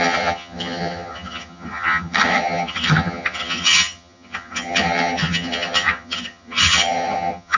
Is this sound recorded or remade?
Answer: remade